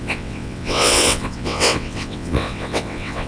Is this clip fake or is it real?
fake